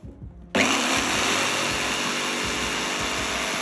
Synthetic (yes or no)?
no